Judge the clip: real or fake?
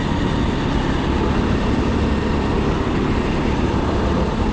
fake